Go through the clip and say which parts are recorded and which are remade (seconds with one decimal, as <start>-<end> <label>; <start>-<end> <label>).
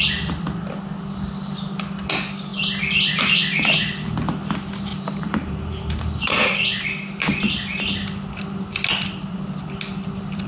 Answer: 0.0-4.9 recorded; 4.9-6.2 remade; 6.2-10.5 recorded